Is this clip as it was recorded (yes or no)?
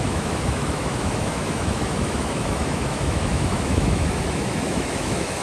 no